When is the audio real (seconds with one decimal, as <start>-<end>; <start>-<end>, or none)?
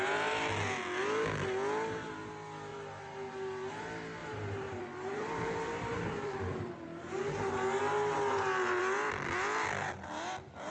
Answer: 0.0-2.7; 3.7-4.2; 8.8-10.7